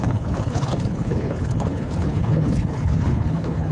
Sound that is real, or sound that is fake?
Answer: fake